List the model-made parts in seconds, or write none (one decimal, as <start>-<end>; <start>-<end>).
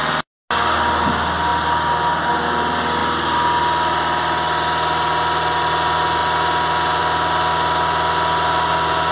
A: none